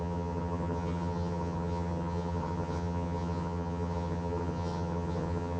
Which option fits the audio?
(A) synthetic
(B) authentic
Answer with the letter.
A